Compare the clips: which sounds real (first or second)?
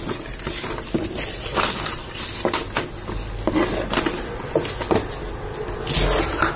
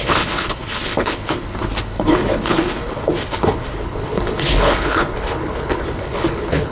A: first